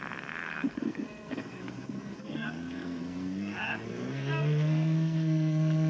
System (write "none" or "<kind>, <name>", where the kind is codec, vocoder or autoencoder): codec, SNAC